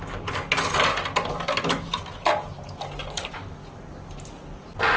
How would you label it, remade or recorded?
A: recorded